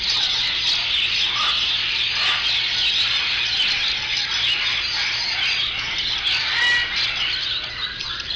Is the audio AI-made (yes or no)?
no